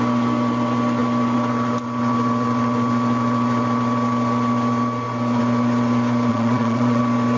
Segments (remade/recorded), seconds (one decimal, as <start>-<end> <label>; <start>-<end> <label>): 0.0-6.3 recorded; 6.3-7.0 remade; 7.0-7.4 recorded